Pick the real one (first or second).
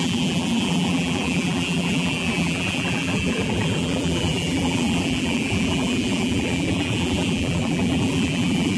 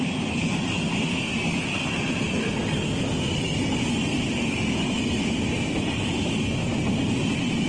second